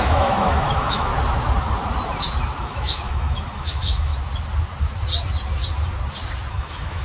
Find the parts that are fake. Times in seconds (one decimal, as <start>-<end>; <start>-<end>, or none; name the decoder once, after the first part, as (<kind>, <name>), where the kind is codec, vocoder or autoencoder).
0.0-1.1 (autoencoder, DAC-VAE); 2.6-4.1; 6.5-7.0